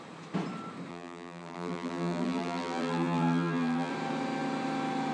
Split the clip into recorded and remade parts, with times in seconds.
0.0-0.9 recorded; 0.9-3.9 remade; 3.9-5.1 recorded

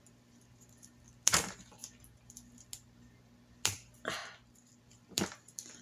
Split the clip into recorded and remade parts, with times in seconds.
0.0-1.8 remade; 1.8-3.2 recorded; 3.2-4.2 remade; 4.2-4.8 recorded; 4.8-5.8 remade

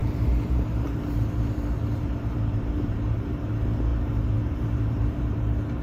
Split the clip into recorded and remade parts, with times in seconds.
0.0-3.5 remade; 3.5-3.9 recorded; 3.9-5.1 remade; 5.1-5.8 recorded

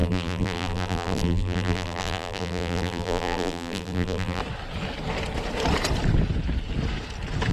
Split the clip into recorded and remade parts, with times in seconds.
0.0-4.4 remade; 4.4-7.5 recorded

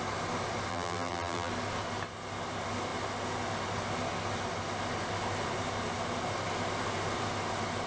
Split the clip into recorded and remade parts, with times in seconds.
0.0-0.7 recorded; 0.7-1.5 remade; 1.5-7.9 recorded